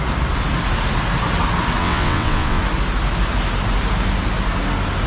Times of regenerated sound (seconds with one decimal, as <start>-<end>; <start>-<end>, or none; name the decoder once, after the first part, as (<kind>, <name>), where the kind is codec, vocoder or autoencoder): 1.8-2.6 (vocoder, WaveNeXt)